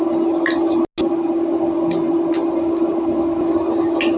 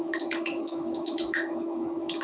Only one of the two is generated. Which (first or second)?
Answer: second